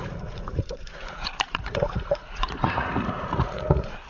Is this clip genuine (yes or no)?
no